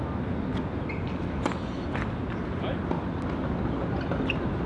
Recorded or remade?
recorded